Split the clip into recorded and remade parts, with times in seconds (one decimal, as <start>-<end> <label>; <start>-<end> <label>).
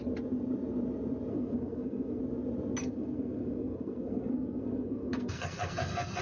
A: 0.0-1.3 recorded; 1.3-2.2 remade; 2.2-2.8 recorded; 2.8-6.2 remade